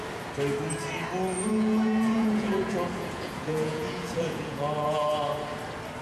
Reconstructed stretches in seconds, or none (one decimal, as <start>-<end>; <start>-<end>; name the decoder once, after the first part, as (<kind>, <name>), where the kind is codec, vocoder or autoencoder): 1.5-5.1 (vocoder, Vocos)